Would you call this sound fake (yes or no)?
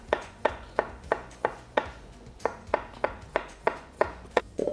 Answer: yes